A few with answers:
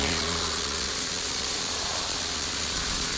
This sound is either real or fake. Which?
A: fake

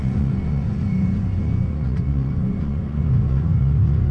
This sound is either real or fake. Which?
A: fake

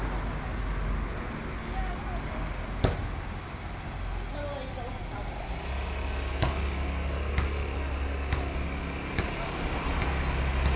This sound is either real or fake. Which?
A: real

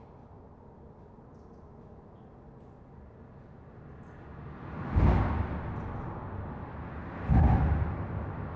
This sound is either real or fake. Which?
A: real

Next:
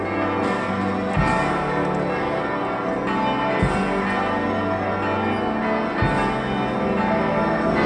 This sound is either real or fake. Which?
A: real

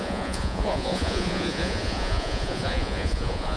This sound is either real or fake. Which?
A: fake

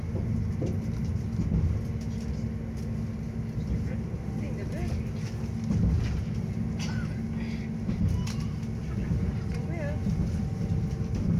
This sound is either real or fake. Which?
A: real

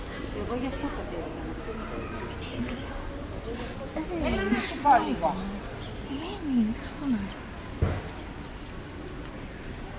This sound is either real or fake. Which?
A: real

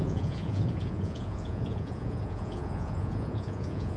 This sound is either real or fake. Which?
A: fake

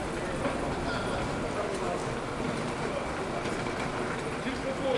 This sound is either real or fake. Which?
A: real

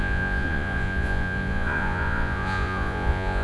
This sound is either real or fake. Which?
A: fake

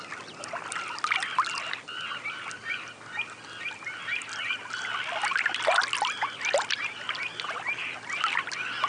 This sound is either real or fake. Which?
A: real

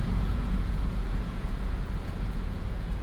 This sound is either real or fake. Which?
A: fake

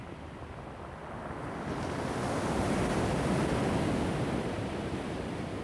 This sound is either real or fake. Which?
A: real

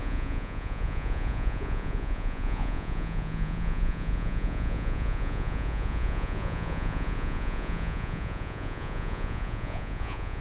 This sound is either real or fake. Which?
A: fake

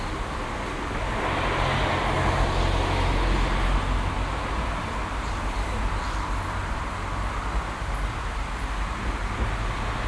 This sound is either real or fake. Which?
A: real